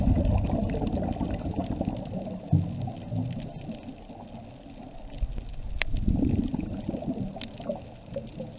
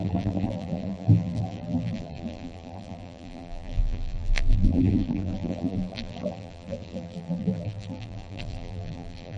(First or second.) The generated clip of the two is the second